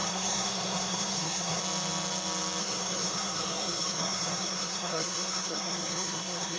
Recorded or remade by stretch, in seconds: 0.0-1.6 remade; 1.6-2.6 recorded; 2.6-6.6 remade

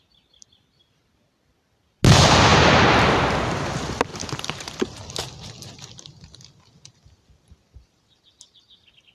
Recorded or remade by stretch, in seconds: 0.0-9.1 recorded

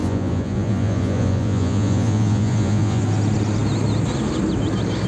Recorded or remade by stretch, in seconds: 0.0-3.0 remade; 3.0-5.1 recorded

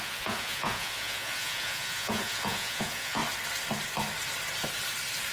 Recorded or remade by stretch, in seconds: 0.0-3.2 remade; 3.2-5.3 recorded

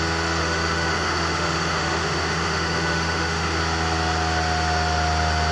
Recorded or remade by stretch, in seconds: 0.0-0.4 recorded; 0.4-3.6 remade; 3.6-5.5 recorded